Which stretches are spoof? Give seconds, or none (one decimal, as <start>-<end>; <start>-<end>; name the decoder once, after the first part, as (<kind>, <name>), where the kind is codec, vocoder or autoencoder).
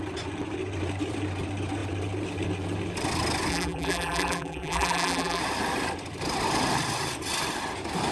3.5-5.4 (vocoder, BigVGAN v2)